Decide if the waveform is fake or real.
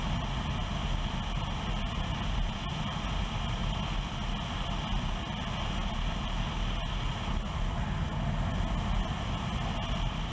real